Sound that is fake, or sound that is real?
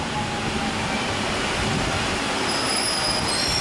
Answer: real